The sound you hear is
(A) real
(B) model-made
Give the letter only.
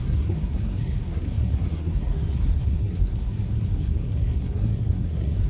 B